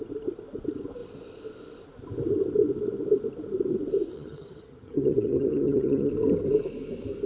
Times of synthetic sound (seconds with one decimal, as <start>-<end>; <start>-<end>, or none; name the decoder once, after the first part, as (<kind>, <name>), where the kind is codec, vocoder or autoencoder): 4.1-6.1 (vocoder, HiFi-GAN)